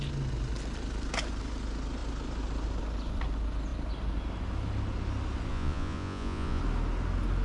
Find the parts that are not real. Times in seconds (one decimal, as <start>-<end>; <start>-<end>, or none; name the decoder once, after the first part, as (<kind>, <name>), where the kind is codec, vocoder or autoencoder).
5.5-6.6 (vocoder, Vocos)